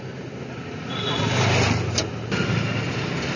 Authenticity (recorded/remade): recorded